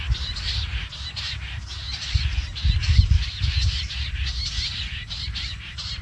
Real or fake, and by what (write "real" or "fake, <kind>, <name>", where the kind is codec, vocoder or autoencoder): real